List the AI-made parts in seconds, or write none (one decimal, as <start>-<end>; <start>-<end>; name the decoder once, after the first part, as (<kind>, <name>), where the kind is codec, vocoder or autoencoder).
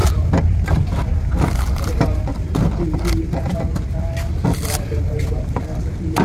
1.5-2.3 (vocoder, BigVGAN v2)